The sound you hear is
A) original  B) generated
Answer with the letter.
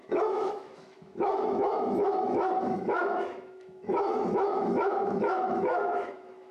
B